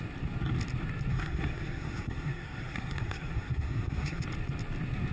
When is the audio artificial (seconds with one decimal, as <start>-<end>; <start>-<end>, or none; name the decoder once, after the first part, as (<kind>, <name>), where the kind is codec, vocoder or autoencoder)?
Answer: 1.1-4.2 (codec, SNAC)